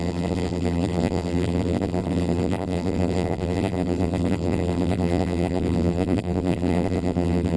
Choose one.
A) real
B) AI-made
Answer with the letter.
B